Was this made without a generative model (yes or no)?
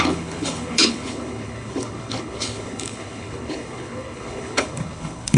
no